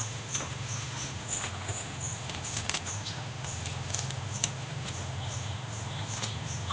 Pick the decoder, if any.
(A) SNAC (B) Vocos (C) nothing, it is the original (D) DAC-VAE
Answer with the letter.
D